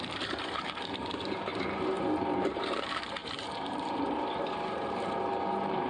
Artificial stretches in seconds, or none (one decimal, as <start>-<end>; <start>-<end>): 0.0-5.9